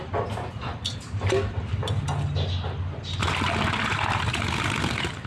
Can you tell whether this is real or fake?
real